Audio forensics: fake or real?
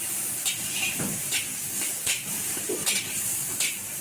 fake